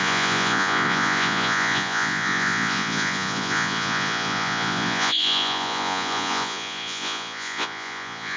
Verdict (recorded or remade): remade